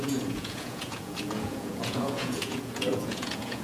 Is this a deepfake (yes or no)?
yes